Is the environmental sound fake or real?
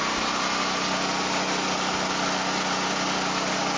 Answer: real